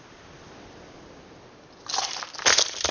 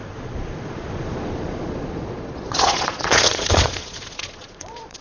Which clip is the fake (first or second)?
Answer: second